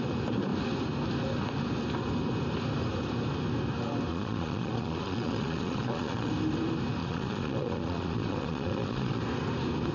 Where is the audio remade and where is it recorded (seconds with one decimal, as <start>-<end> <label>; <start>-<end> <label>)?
0.0-4.1 recorded; 4.1-6.3 remade; 6.3-7.0 recorded; 7.0-9.2 remade; 9.2-9.9 recorded